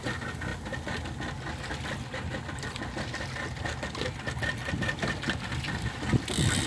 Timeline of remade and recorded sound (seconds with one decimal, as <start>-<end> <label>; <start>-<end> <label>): 0.0-6.7 recorded